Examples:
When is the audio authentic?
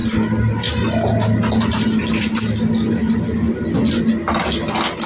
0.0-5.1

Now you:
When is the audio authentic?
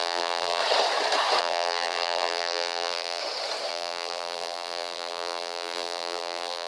0.6-1.4; 3.2-3.7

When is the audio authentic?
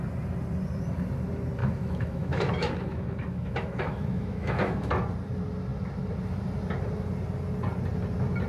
0.0-1.6; 4.9-8.5